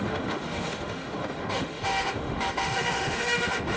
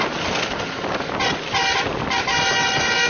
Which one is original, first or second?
second